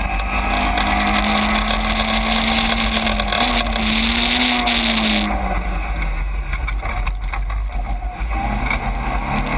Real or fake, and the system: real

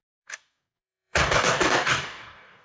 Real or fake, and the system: fake, codec, DAC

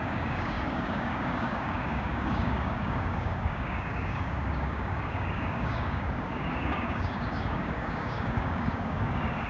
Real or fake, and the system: fake, codec, DAC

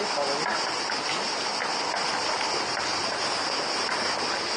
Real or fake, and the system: real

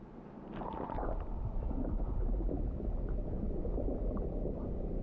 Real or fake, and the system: real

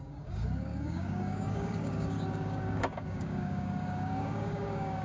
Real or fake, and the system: fake, codec, DAC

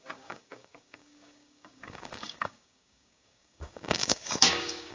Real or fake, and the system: fake, codec, DAC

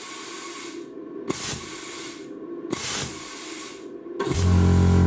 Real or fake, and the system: real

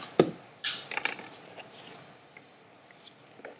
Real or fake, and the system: real